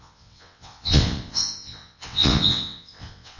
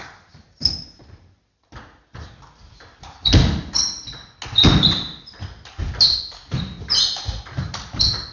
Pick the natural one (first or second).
second